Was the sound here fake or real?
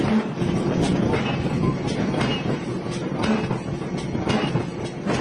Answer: real